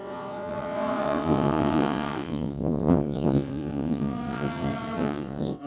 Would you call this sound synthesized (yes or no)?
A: yes